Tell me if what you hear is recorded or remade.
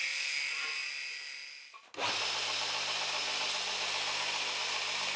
recorded